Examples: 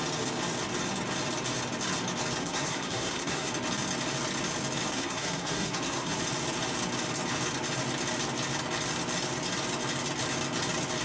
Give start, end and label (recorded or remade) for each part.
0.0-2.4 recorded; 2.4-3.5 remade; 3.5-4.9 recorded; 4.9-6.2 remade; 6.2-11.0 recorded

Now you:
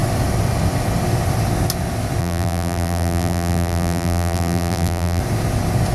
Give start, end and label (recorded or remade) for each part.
0.0-2.2 recorded; 2.2-5.2 remade; 5.2-5.9 recorded

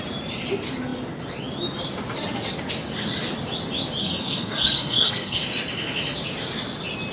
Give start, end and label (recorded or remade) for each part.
0.0-4.0 recorded; 4.0-5.4 remade; 5.4-7.1 recorded

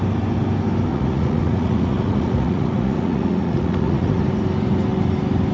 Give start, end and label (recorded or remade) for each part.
0.0-0.9 recorded; 0.9-4.2 remade; 4.2-5.5 recorded